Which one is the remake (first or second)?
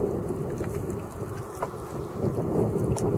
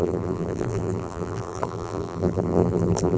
second